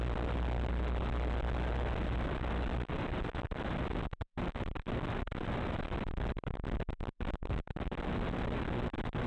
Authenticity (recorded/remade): recorded